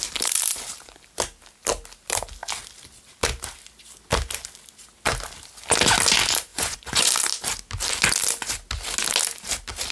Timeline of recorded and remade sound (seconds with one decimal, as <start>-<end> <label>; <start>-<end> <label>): 0.0-6.5 recorded; 6.5-7.1 remade; 7.1-9.9 recorded